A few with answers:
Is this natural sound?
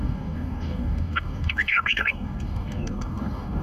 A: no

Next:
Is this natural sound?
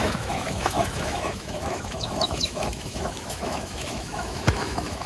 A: no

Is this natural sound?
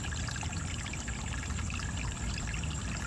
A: no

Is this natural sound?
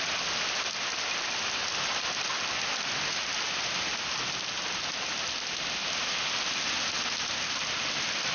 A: yes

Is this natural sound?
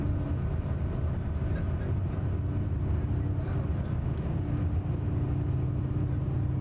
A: yes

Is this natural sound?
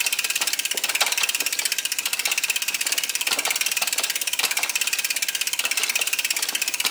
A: no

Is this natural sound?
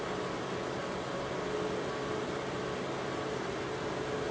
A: yes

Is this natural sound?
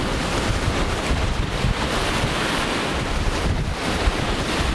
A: no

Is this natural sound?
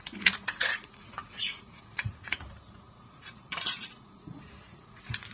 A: no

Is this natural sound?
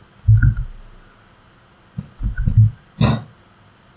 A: yes